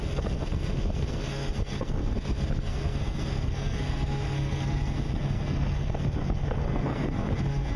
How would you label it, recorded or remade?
remade